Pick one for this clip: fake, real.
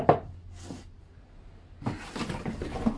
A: real